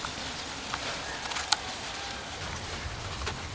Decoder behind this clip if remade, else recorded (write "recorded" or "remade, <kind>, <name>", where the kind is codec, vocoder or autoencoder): recorded